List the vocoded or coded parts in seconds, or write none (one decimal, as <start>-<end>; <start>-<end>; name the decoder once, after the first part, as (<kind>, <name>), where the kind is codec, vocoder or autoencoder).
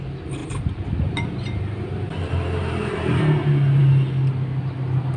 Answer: 0.4-3.2 (vocoder, BigVGAN v2)